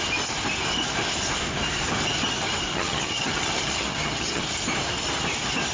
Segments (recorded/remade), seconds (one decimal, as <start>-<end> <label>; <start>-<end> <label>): 0.0-2.7 recorded; 2.7-4.4 remade; 4.4-5.7 recorded